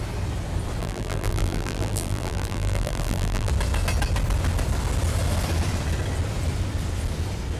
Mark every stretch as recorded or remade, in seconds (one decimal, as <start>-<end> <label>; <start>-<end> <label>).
0.0-0.8 recorded; 0.8-3.5 remade; 3.5-7.6 recorded

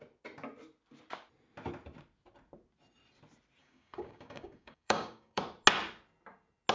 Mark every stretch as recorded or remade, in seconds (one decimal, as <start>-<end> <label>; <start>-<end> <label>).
0.0-3.6 recorded; 3.6-5.4 remade; 5.4-6.7 recorded

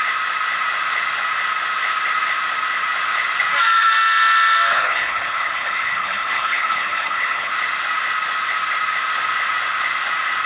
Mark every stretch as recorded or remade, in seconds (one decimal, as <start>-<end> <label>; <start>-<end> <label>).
0.0-4.7 recorded; 4.7-7.5 remade; 7.5-10.5 recorded

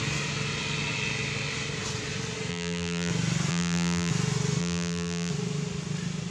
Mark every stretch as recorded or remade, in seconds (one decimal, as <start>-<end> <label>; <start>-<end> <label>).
0.0-2.5 recorded; 2.5-3.1 remade; 3.1-3.5 recorded; 3.5-4.1 remade; 4.1-4.6 recorded; 4.6-5.3 remade; 5.3-6.3 recorded

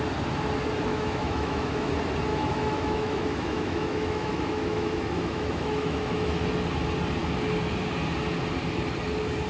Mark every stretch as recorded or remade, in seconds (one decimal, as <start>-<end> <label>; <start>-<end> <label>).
0.0-0.9 recorded; 0.9-1.9 remade; 1.9-2.3 recorded; 2.3-6.3 remade; 6.3-9.5 recorded

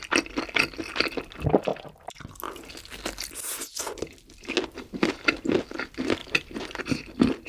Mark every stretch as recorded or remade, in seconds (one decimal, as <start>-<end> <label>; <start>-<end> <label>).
0.0-6.2 recorded; 6.2-6.8 remade; 6.8-7.5 recorded

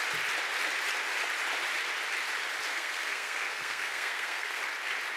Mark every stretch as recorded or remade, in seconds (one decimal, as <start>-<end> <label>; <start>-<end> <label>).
0.0-2.7 recorded; 2.7-4.6 remade; 4.6-5.2 recorded